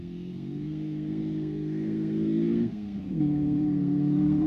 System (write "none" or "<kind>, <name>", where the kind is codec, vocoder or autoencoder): codec, SNAC